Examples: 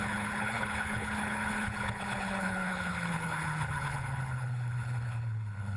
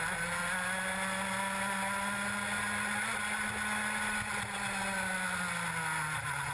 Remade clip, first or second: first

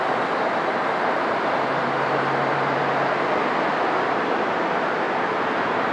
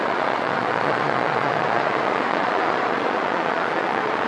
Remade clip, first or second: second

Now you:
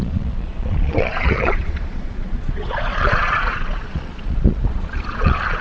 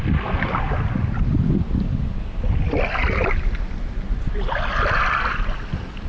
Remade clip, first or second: first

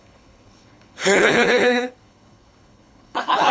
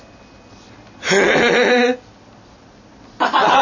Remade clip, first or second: first